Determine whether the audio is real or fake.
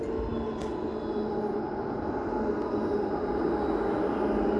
real